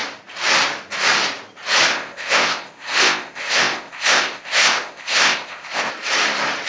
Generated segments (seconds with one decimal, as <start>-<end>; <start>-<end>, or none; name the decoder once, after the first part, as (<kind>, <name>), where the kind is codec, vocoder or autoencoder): 1.9-5.9 (codec, ZipCodec)